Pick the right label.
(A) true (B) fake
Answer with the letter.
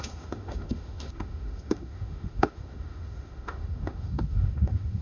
B